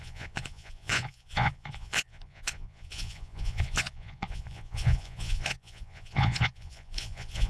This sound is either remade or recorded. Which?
remade